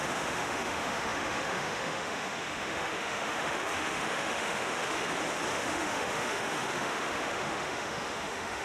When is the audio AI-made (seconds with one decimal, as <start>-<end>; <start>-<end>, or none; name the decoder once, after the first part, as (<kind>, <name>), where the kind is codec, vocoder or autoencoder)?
0.0-5.0 (autoencoder, DAC-VAE); 5.5-8.6